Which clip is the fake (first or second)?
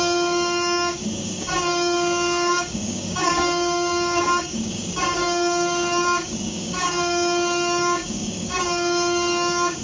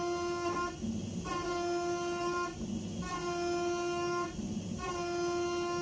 first